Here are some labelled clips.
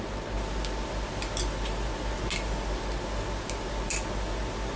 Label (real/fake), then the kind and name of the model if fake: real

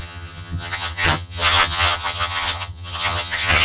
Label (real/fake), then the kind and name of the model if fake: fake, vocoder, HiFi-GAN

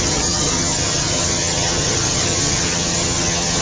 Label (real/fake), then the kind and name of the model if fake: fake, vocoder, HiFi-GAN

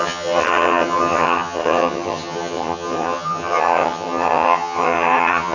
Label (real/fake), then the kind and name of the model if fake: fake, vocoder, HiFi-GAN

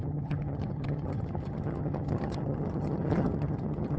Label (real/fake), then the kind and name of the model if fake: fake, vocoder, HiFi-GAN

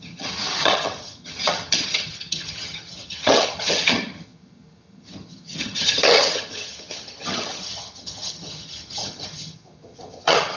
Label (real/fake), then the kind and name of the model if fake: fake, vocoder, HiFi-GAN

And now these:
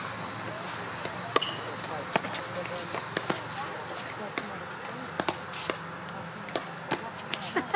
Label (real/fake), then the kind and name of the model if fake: real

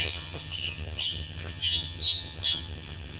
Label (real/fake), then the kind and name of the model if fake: fake, vocoder, HiFi-GAN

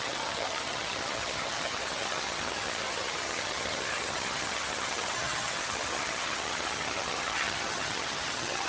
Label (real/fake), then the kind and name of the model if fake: fake, vocoder, HiFi-GAN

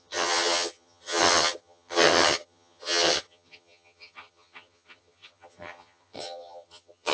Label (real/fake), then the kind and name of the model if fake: fake, vocoder, HiFi-GAN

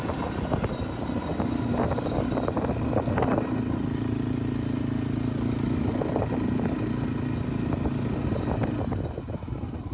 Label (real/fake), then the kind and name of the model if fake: real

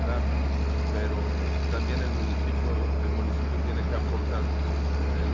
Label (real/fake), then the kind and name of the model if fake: real